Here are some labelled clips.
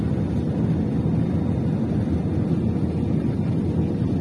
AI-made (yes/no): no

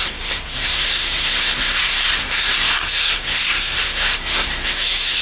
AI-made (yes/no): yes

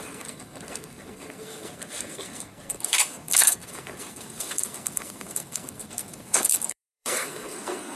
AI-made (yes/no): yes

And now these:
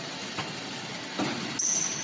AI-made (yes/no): no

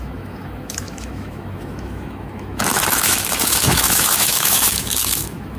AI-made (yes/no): yes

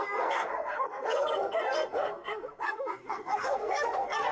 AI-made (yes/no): yes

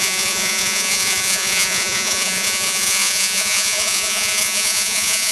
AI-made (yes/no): yes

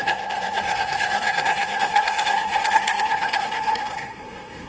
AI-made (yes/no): yes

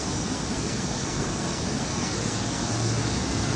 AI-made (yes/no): yes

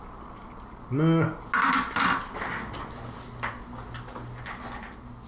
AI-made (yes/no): no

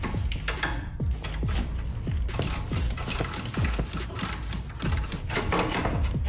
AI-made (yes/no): yes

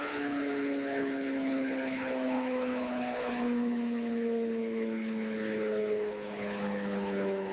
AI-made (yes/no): yes